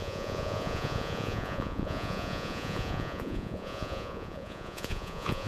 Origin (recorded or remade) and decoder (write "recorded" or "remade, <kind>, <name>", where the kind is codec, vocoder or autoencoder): remade, vocoder, Vocos